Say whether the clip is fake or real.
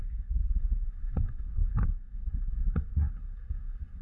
fake